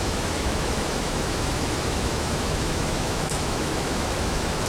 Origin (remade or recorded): remade